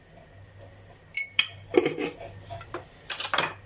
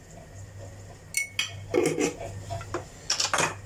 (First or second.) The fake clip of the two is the first